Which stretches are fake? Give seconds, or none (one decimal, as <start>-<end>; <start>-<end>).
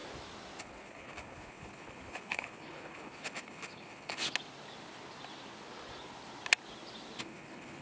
0.6-4.3; 7.2-7.8